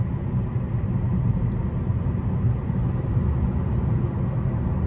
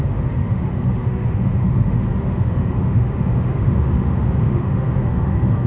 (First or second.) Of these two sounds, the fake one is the second